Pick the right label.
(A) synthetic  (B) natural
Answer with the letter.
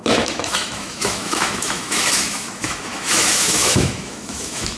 A